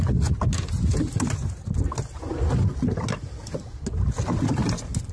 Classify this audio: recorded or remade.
recorded